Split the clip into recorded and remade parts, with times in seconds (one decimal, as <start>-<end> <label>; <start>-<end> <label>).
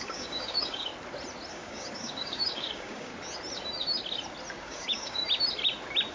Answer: 0.0-0.9 remade; 0.9-1.5 recorded; 1.5-3.1 remade; 3.1-4.6 recorded; 4.6-5.2 remade; 5.2-6.1 recorded